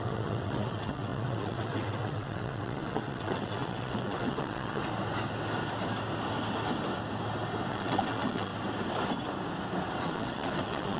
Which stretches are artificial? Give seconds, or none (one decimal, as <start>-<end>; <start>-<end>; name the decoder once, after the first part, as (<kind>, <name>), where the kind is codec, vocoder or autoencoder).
0.0-4.8 (vocoder, WaveNeXt); 7.7-8.5; 10.0-11.0